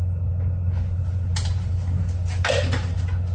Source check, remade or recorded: recorded